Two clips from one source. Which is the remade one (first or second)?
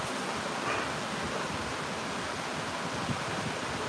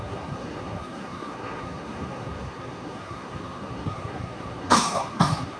second